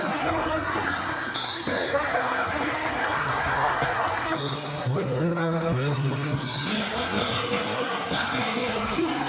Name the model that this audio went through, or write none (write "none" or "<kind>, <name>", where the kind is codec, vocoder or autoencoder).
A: codec, SNAC